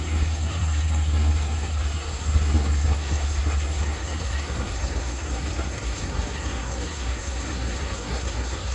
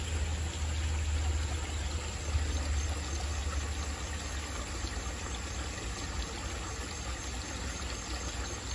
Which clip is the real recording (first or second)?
second